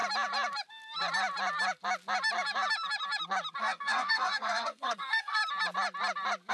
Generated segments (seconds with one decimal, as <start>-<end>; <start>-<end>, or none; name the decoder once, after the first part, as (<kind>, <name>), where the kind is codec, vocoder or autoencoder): 3.6-5.4 (codec, SNAC)